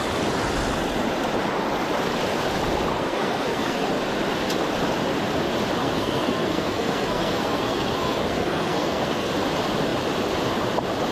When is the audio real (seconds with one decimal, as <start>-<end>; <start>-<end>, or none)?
0.0-2.9; 3.9-5.8; 9.3-11.1